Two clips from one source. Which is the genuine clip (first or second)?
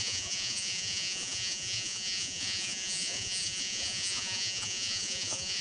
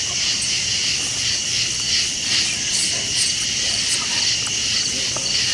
second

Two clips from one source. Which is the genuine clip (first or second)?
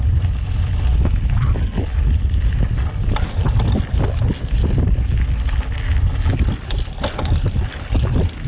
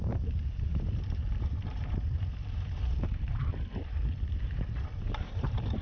first